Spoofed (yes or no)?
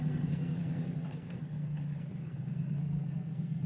yes